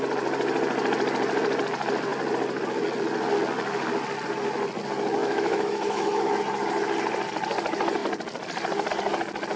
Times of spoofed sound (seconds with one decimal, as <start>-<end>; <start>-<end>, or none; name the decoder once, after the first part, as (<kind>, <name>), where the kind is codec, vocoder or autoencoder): 5.2-6.4 (autoencoder, DAC-VAE)